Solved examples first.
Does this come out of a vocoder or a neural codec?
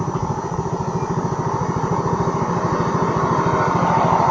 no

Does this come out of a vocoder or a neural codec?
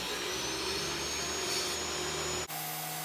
no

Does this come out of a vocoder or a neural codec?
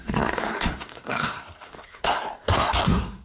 yes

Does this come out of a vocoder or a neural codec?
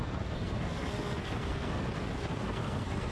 yes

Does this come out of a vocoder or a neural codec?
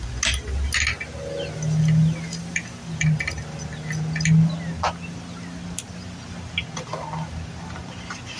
no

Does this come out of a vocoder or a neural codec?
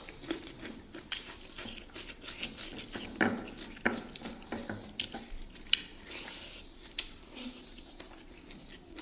no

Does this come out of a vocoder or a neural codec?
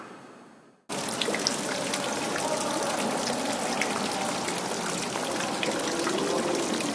no